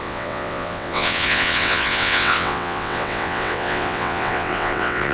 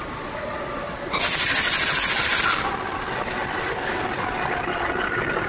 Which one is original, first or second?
second